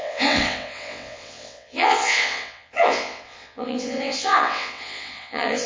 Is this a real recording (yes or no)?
no